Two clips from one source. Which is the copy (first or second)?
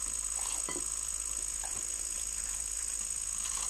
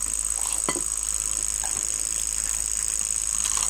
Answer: first